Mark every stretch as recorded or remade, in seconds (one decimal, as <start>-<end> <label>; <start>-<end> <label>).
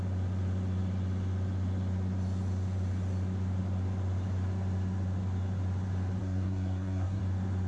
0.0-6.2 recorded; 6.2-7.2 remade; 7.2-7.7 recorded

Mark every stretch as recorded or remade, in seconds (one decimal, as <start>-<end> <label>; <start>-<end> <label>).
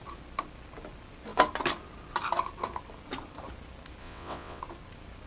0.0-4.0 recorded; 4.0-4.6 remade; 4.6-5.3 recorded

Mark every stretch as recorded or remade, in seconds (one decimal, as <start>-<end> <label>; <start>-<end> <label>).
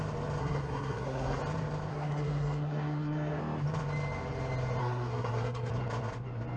0.0-0.4 recorded; 0.4-1.4 remade; 1.4-1.9 recorded; 1.9-3.4 remade; 3.4-4.8 recorded; 4.8-5.7 remade; 5.7-6.6 recorded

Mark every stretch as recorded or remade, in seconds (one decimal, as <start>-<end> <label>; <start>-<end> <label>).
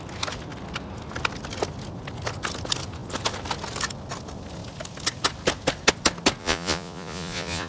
0.0-6.4 recorded; 6.4-7.7 remade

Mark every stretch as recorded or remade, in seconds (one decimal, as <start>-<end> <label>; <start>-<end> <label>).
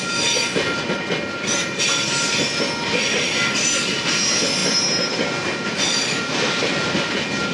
0.0-7.5 recorded